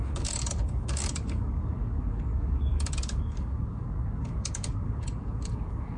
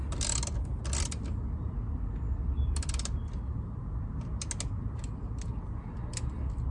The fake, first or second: first